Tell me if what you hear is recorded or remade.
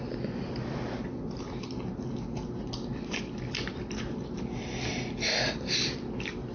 recorded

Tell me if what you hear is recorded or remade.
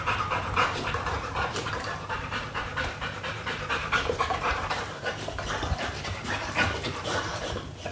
remade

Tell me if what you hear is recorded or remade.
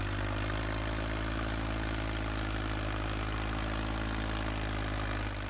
recorded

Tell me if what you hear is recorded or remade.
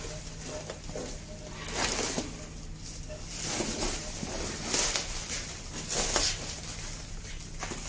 recorded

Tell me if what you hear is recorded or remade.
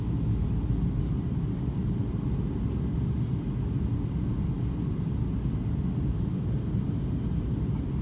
recorded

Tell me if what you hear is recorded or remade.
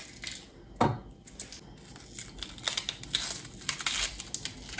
recorded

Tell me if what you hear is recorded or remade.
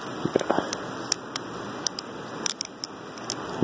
recorded